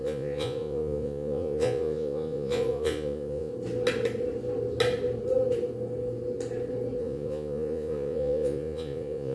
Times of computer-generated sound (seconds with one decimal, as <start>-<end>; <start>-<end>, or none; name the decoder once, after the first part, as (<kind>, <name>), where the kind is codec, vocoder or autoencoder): 0.0-3.5 (vocoder, Vocos); 7.0-9.3